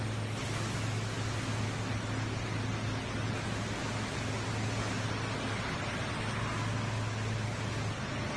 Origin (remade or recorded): recorded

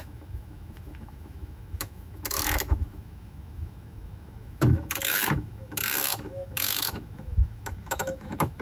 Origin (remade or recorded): remade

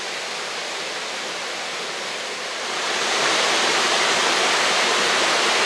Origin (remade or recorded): recorded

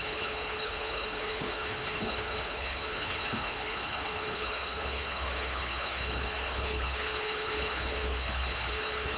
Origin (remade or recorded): remade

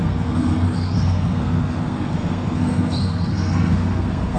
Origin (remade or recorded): remade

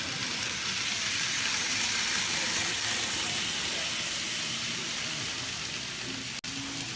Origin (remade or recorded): recorded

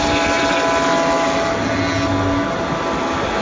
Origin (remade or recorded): recorded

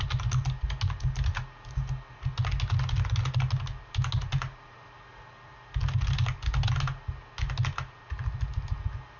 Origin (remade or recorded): recorded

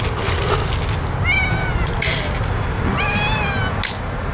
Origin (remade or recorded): recorded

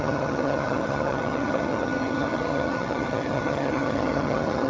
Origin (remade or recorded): remade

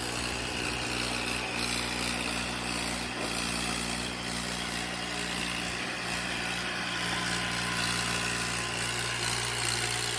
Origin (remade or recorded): recorded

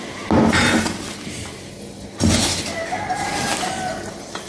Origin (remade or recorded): recorded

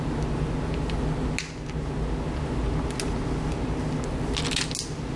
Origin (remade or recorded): recorded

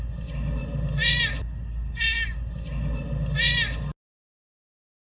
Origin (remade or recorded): recorded